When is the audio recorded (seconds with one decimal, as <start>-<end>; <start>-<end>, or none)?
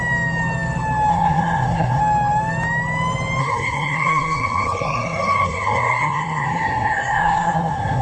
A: 0.0-1.1; 2.0-3.4